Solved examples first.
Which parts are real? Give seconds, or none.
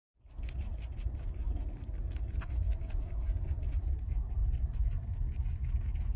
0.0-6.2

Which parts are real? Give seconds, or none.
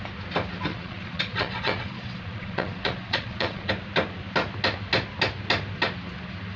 0.0-0.7; 3.7-6.6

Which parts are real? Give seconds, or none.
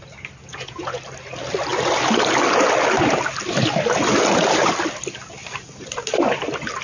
0.0-0.5; 1.0-6.8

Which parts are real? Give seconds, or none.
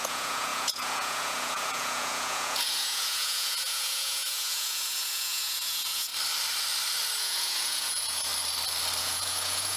6.1-7.2; 8.3-9.0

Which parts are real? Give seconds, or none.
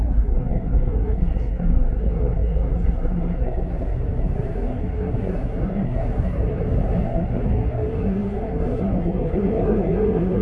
none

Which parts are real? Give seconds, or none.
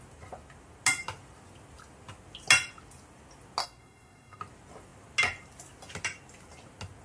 0.0-3.6; 4.4-7.0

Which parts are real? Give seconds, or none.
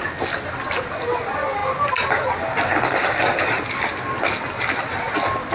0.0-5.5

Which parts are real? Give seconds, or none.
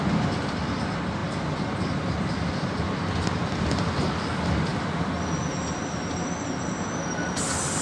0.0-7.8